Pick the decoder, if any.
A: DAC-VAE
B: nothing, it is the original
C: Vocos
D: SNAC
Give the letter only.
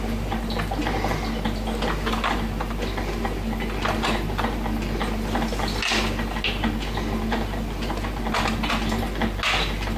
B